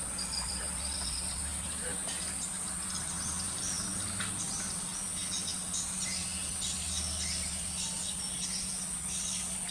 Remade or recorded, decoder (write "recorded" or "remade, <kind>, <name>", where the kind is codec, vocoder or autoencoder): recorded